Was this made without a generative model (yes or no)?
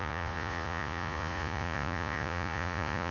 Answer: no